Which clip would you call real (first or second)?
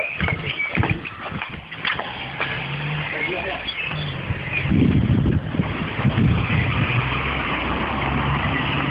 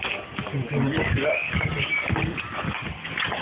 second